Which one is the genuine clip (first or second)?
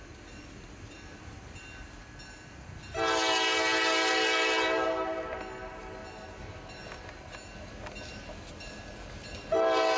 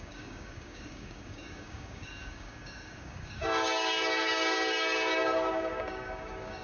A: first